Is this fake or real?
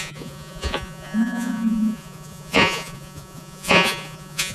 fake